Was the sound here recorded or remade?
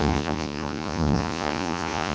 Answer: remade